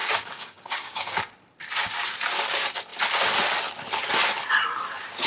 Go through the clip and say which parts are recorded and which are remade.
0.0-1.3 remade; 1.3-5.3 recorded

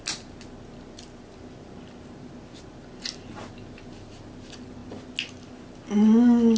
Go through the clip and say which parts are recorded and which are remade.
0.0-6.6 recorded

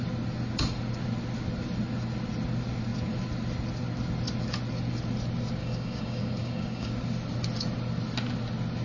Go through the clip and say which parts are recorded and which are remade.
0.0-5.6 recorded; 5.6-6.9 remade; 6.9-8.8 recorded

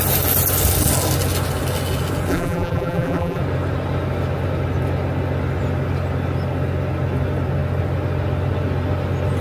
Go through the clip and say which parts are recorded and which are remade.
0.0-2.3 recorded; 2.3-3.4 remade; 3.4-9.4 recorded

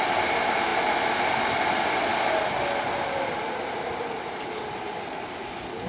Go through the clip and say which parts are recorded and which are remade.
0.0-5.9 recorded

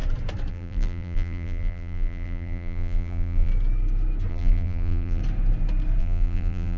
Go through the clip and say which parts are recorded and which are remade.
0.0-0.5 recorded; 0.5-3.5 remade; 3.5-4.3 recorded; 4.3-5.2 remade; 5.2-6.0 recorded; 6.0-6.8 remade

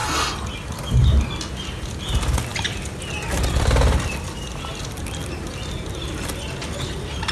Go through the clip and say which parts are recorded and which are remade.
0.0-7.3 recorded

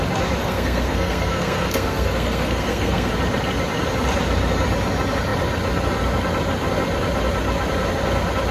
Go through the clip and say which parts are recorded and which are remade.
0.0-0.4 recorded; 0.4-3.1 remade; 3.1-8.5 recorded